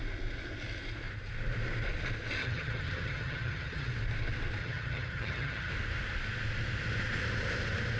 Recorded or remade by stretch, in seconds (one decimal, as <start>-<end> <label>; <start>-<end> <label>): 0.0-2.4 recorded; 2.4-3.9 remade; 3.9-4.6 recorded; 4.6-5.7 remade; 5.7-8.0 recorded

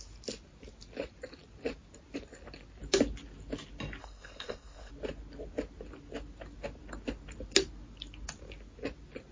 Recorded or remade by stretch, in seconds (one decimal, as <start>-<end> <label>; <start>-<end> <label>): 0.0-4.0 recorded; 4.0-4.9 remade; 4.9-9.3 recorded

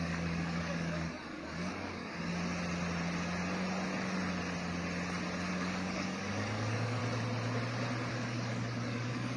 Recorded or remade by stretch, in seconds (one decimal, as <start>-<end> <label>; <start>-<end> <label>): 0.0-2.3 remade; 2.3-5.5 recorded; 5.5-7.0 remade; 7.0-8.1 recorded; 8.1-9.4 remade

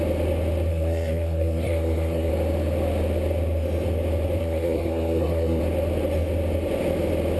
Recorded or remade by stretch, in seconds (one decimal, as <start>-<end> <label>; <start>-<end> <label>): 0.0-0.7 recorded; 0.7-2.3 remade; 2.3-4.4 recorded; 4.4-5.6 remade; 5.6-7.4 recorded

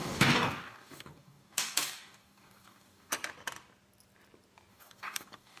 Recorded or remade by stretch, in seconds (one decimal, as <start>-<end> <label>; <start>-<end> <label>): 0.0-3.1 remade; 3.1-4.7 recorded; 4.7-5.6 remade

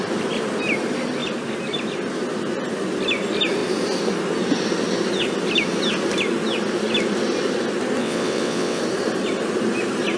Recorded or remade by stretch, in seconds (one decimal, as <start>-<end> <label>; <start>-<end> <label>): 0.0-8.0 recorded; 8.0-8.8 remade; 8.8-10.2 recorded

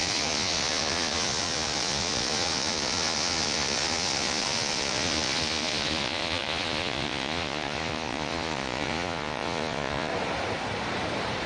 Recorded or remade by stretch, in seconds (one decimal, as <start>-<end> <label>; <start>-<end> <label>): 0.0-10.1 remade; 10.1-11.5 recorded

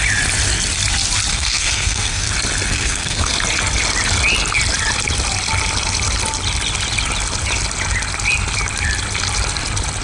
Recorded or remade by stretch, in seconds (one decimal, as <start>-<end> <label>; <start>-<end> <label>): 0.0-1.3 recorded; 1.3-2.3 remade; 2.3-2.7 recorded; 2.7-3.3 remade; 3.3-10.0 recorded